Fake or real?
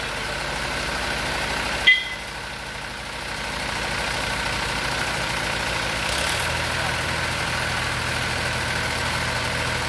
real